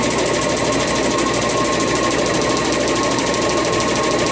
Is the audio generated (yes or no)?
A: no